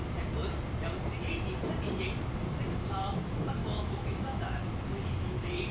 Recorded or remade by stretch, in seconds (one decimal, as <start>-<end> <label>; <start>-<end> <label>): 0.0-3.6 recorded; 3.6-4.4 remade; 4.4-5.7 recorded